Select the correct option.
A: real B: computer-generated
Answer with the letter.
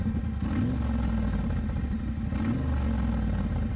A